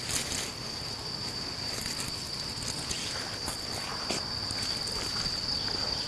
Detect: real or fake real